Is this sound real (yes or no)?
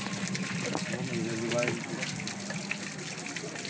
yes